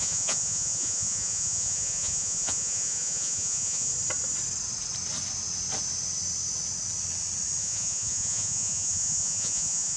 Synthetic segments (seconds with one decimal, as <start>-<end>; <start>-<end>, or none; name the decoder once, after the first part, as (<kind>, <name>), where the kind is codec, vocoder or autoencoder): 0.0-3.9 (vocoder, Vocos); 7.6-10.0